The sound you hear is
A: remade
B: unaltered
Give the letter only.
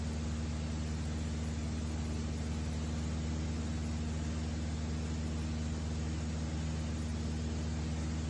B